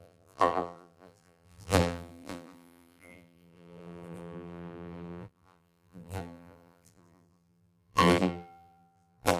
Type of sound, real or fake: fake